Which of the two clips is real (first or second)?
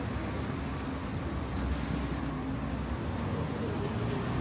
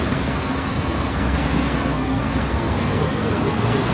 first